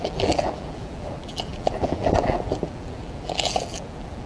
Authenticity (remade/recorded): remade